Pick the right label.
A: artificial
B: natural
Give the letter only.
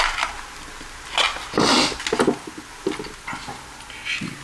B